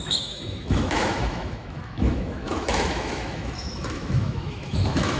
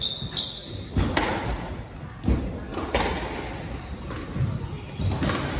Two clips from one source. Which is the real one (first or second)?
second